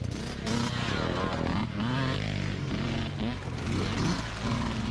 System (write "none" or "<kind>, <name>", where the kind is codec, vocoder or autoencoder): none